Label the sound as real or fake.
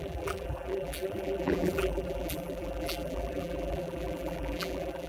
fake